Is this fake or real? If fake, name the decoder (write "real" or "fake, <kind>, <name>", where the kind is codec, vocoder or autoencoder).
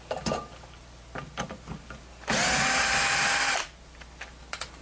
real